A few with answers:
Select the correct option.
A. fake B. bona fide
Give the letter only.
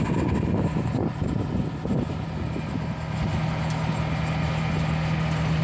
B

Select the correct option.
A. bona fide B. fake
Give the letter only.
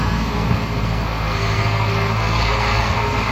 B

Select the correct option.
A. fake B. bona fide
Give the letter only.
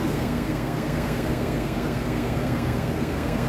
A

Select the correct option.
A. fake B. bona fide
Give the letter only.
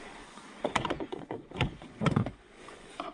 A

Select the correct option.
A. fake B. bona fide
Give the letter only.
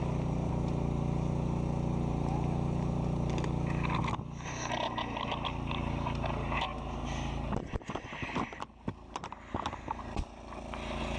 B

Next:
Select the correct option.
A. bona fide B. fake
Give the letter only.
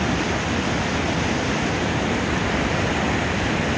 A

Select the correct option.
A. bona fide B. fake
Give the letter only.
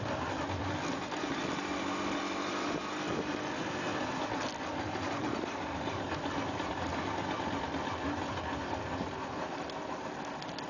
A